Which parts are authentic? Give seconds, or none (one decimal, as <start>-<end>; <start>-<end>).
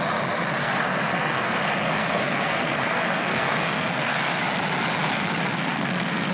0.0-0.6; 4.4-5.4